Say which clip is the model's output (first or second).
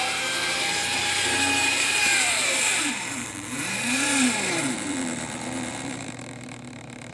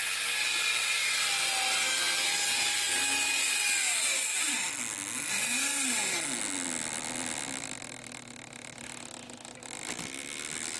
first